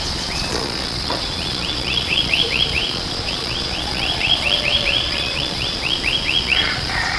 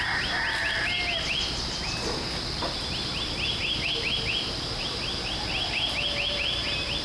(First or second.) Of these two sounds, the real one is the second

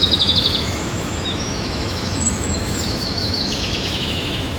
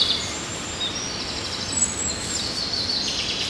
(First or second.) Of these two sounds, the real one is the second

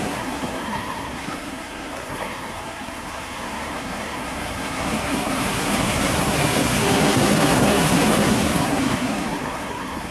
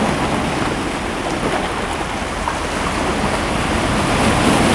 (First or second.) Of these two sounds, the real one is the second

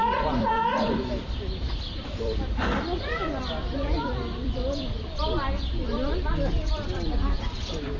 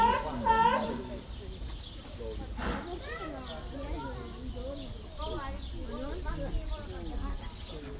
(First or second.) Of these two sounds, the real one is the second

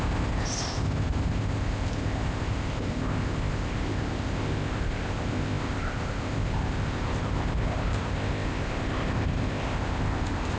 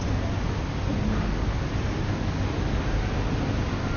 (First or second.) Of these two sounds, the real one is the second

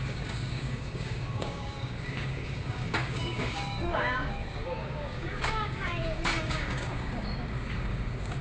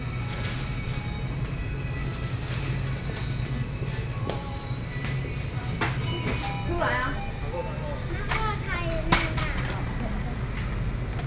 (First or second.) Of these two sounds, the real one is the second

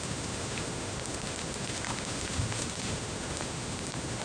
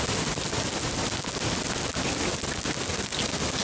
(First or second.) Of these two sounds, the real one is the second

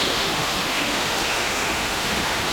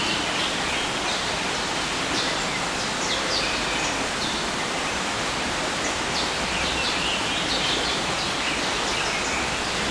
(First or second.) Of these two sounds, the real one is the second